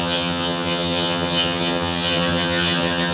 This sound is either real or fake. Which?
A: fake